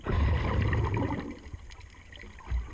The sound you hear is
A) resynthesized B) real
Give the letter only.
B